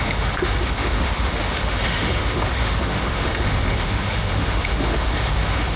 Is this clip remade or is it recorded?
remade